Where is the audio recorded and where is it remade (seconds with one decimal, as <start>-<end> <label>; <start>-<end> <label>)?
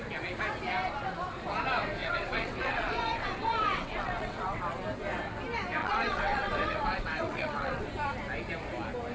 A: 0.0-2.0 recorded; 2.0-4.6 remade; 4.6-5.8 recorded; 5.8-7.8 remade; 7.8-9.1 recorded